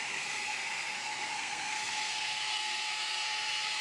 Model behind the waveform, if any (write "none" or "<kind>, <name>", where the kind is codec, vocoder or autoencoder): codec, SNAC